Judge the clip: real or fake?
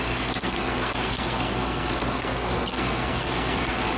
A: fake